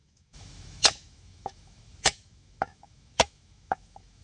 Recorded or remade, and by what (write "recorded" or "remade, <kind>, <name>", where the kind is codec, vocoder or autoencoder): remade, autoencoder, DAC-VAE